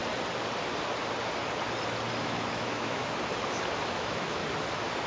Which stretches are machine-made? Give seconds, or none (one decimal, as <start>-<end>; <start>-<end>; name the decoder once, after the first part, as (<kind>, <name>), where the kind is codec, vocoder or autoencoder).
2.2-3.0 (autoencoder, DAC-VAE); 3.8-4.4